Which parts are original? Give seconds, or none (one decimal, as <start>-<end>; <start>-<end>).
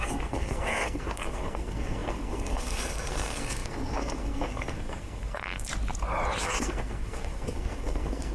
5.7-6.4